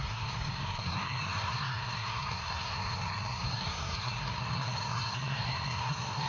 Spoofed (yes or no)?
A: yes